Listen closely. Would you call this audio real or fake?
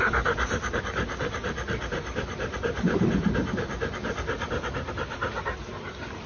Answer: fake